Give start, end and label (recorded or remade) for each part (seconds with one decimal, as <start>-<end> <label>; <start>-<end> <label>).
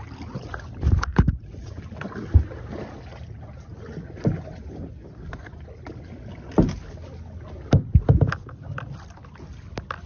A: 0.0-1.1 recorded; 1.1-1.8 remade; 1.8-10.1 recorded